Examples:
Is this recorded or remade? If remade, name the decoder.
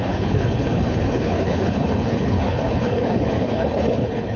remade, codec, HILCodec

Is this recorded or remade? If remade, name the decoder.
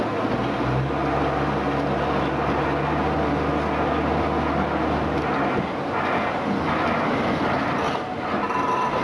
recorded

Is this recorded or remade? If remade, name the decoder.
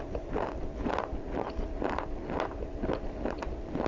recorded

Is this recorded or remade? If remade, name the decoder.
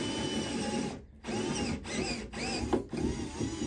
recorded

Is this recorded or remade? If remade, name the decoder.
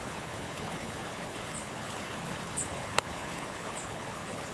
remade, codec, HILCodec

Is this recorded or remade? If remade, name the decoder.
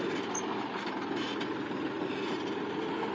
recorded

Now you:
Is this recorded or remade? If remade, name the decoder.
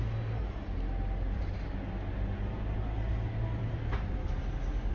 recorded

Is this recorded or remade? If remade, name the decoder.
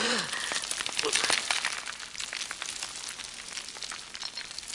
recorded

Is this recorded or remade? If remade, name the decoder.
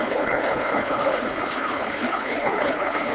remade, codec, HILCodec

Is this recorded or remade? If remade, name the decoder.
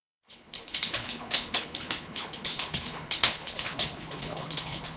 remade, codec, HILCodec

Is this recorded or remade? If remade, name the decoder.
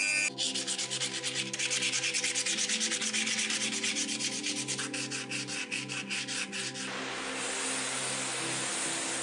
recorded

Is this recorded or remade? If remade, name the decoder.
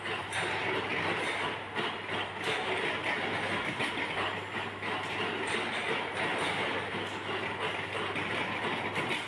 recorded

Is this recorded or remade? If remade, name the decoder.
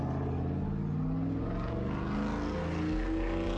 recorded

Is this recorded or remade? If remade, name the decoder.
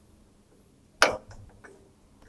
recorded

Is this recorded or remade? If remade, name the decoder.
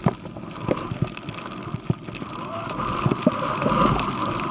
recorded